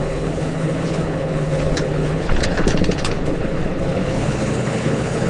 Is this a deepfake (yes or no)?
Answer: yes